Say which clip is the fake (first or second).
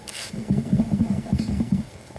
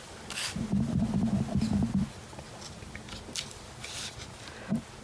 first